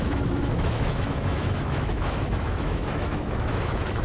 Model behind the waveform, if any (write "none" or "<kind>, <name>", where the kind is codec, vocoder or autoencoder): autoencoder, DAC-VAE